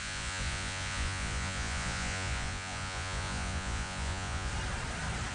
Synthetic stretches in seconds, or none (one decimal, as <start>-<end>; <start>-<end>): 0.0-4.5